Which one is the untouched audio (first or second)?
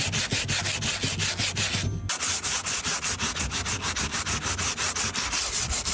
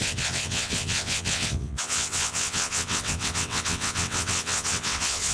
first